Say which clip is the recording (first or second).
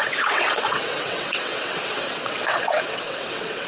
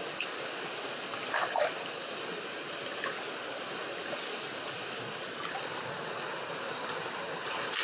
second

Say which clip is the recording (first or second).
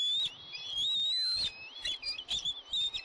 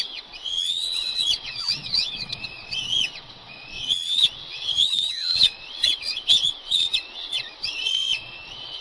first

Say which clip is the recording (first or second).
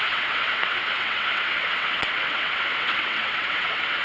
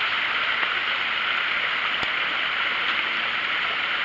second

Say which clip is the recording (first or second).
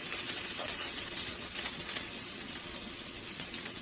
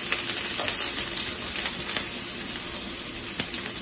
second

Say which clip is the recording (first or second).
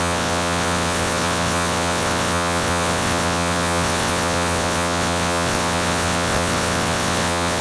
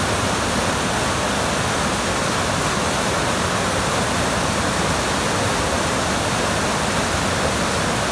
second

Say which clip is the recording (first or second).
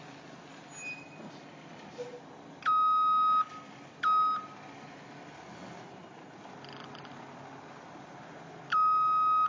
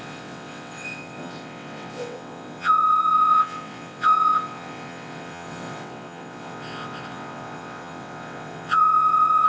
first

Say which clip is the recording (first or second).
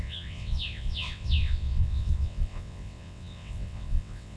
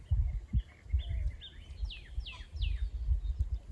second